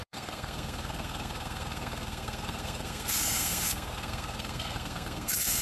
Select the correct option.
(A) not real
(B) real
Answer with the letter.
A